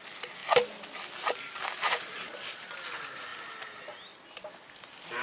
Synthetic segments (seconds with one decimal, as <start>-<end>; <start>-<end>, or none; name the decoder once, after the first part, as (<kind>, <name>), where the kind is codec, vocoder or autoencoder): 1.8-2.8 (vocoder, Vocos)